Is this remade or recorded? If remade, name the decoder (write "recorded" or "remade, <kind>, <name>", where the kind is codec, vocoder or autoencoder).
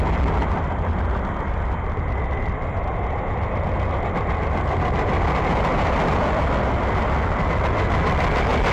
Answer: recorded